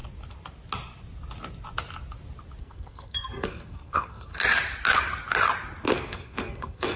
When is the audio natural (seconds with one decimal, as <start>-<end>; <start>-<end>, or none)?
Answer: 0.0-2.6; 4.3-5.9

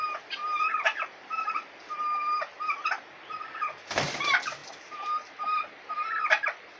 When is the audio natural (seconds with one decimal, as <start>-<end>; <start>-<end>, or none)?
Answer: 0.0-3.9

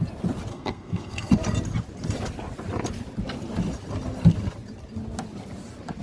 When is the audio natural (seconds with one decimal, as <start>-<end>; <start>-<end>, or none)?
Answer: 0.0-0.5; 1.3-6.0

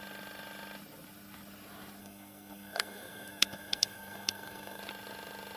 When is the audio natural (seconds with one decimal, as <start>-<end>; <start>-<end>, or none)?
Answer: 0.0-2.0; 4.8-5.6

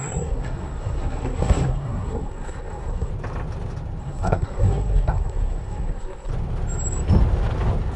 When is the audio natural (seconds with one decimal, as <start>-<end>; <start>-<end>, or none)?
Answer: 3.1-4.0; 6.3-8.0

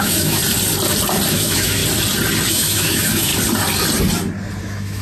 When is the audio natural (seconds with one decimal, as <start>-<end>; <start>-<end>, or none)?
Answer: 0.4-1.3; 1.8-2.5; 3.3-4.6